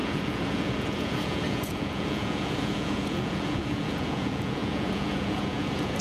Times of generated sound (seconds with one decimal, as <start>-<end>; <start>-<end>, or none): 0.0-6.0